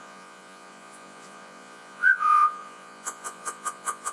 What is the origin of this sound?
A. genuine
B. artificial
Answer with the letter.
B